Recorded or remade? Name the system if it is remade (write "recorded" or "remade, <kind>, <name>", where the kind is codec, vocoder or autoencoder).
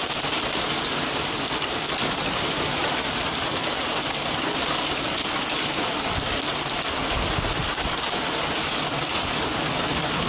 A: recorded